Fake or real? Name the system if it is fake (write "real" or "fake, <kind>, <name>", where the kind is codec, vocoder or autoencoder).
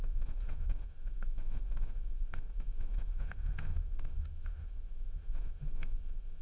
fake, autoencoder, DAC-VAE